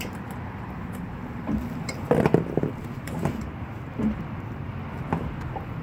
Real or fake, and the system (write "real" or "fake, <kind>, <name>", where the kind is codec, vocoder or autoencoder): fake, vocoder, BigVGAN v2